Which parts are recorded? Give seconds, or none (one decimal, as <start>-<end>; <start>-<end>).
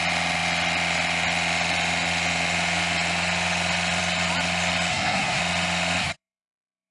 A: 0.0-4.9; 5.4-6.0